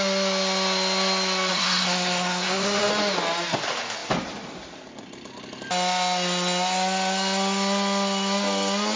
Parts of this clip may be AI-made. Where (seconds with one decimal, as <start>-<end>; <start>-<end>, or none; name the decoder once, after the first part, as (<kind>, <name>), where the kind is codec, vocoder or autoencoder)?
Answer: 1.5-2.9 (codec, SNAC)